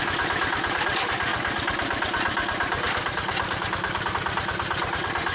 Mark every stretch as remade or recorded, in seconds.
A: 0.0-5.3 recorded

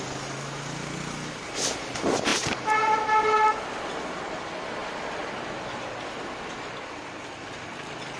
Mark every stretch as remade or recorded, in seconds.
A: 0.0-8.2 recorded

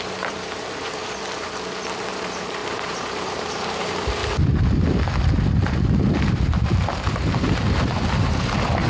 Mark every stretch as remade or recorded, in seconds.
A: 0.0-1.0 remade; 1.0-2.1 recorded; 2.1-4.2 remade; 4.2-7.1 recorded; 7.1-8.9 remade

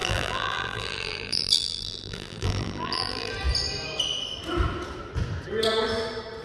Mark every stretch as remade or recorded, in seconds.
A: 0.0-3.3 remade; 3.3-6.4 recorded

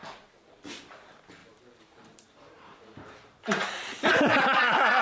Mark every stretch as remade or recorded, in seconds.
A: 0.0-1.4 recorded; 1.4-4.4 remade; 4.4-5.0 recorded

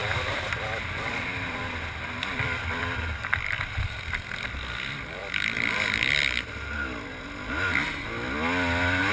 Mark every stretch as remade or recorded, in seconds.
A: 0.0-4.0 remade; 4.0-5.2 recorded; 5.2-5.8 remade; 5.8-9.1 recorded

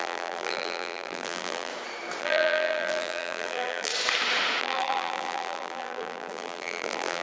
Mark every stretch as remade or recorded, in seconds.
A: 0.0-1.7 remade; 1.7-2.2 recorded; 2.2-3.9 remade; 3.9-4.6 recorded; 4.6-7.2 remade

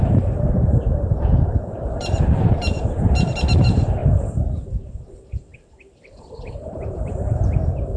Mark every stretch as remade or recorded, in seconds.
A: 0.0-4.0 remade; 4.0-4.8 recorded; 4.8-8.0 remade